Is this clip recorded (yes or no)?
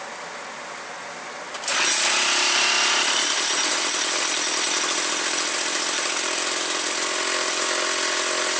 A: yes